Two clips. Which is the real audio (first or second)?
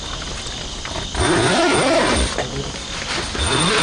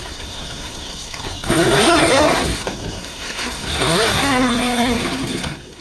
first